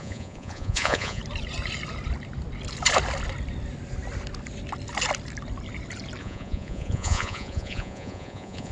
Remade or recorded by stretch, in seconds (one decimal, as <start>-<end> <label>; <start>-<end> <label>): 0.0-1.2 remade; 1.2-6.2 recorded; 6.2-8.7 remade